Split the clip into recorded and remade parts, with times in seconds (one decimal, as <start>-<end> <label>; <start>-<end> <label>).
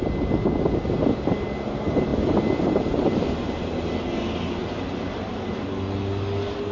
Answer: 0.0-4.6 recorded; 4.6-5.6 remade; 5.6-6.7 recorded